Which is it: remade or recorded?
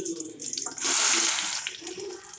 recorded